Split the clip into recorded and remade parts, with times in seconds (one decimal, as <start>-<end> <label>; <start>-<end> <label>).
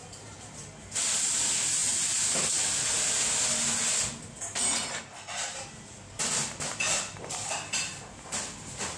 0.0-9.0 recorded